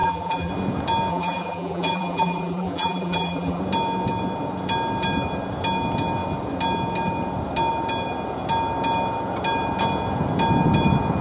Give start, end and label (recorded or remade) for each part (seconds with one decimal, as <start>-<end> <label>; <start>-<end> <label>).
0.0-0.5 remade; 0.5-1.1 recorded; 1.1-3.6 remade; 3.6-11.2 recorded